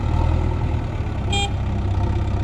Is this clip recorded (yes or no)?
yes